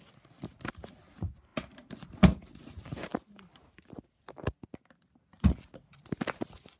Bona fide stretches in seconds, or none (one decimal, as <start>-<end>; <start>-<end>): 0.0-6.8